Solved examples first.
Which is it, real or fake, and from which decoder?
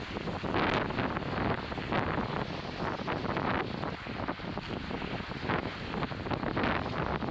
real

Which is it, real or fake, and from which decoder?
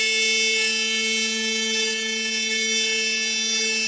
real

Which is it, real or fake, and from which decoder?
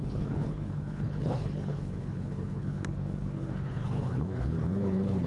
fake, codec, HILCodec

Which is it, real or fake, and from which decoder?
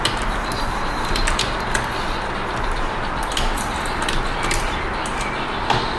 real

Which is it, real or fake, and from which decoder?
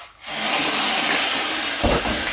real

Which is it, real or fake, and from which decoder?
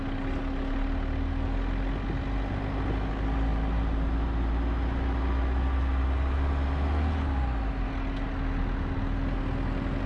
real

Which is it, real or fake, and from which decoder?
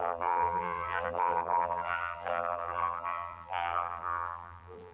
fake, vocoder, BigVGAN v2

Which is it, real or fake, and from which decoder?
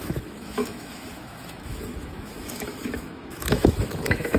fake, autoencoder, DAC-VAE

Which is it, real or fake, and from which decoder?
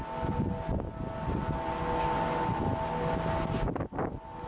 real